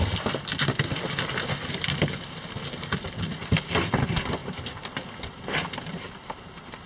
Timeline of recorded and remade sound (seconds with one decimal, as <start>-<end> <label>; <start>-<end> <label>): 0.0-6.9 recorded